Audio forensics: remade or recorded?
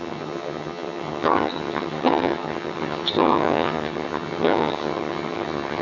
remade